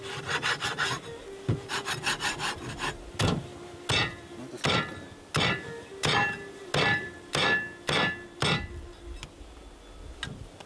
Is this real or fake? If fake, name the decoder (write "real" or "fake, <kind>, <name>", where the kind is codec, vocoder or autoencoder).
real